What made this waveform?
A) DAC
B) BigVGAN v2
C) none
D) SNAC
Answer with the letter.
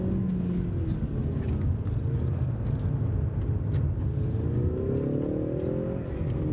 C